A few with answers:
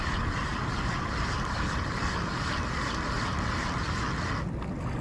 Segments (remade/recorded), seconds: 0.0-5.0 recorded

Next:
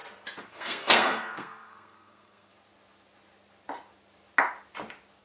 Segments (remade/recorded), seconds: 0.0-0.5 recorded; 0.5-2.5 remade; 2.5-5.2 recorded